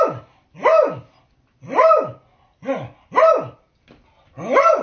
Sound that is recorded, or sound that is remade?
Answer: recorded